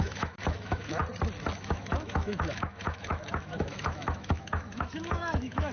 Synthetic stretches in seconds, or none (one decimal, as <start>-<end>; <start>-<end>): 0.0-1.0; 1.6-5.7